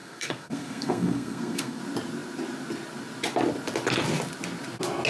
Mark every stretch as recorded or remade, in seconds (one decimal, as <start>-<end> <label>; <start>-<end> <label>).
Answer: 0.0-1.8 remade; 1.8-5.1 recorded